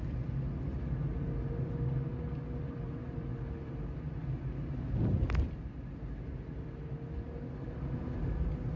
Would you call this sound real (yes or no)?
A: yes